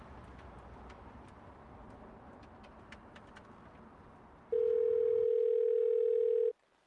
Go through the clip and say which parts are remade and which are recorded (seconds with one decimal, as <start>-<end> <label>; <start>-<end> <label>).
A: 0.0-6.9 recorded